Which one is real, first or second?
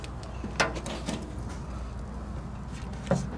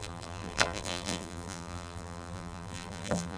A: first